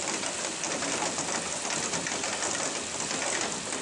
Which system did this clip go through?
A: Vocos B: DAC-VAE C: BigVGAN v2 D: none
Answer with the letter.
D